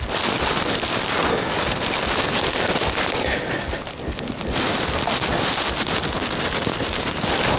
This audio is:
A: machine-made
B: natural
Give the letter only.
B